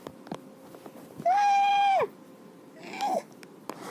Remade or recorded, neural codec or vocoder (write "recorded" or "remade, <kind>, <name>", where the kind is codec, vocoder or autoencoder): recorded